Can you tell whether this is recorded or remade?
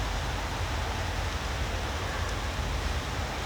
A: recorded